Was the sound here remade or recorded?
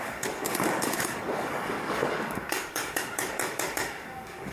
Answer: remade